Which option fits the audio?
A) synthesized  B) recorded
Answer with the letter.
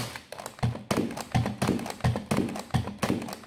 B